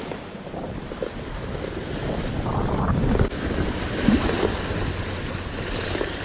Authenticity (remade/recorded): recorded